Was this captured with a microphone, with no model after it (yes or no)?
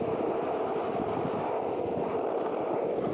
yes